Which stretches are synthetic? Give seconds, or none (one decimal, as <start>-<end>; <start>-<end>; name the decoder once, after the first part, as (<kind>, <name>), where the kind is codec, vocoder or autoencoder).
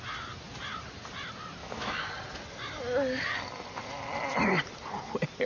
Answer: 1.6-2.1 (autoencoder, DAC-VAE)